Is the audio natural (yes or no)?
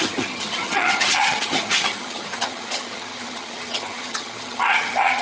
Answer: no